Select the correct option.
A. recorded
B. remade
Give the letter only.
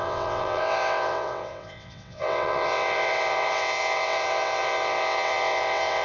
B